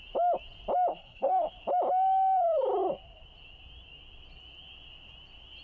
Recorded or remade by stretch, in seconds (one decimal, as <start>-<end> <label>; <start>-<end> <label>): 0.0-0.9 recorded; 0.9-1.5 remade; 1.5-5.6 recorded